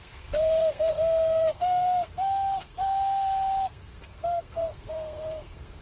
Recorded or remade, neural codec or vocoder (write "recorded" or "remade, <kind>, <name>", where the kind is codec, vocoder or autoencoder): remade, codec, SNAC